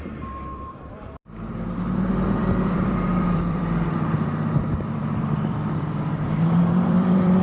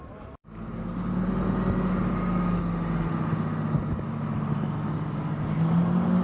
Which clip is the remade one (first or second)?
first